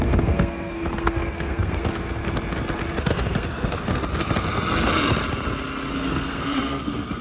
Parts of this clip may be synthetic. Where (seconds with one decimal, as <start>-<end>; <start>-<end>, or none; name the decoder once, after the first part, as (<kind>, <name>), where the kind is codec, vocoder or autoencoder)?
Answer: 0.0-2.2 (codec, SNAC); 3.0-4.0; 5.9-7.2